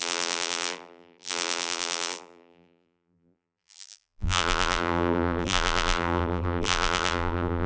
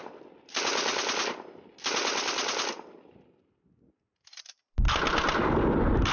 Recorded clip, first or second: second